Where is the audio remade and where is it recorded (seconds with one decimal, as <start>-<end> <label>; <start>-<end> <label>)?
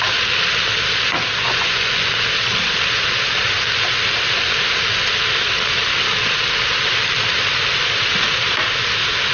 0.0-1.4 recorded; 1.4-2.1 remade; 2.1-9.3 recorded